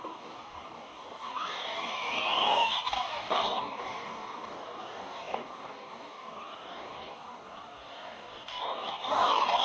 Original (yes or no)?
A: no